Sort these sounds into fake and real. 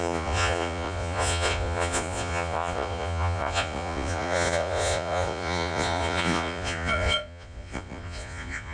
fake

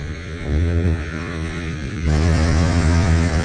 fake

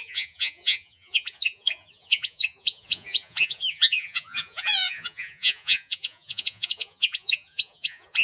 fake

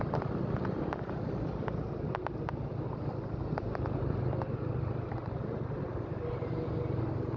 real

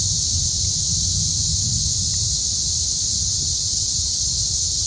real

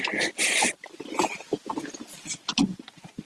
real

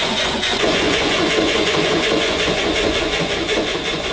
fake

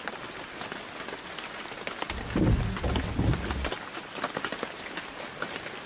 real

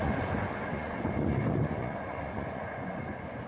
fake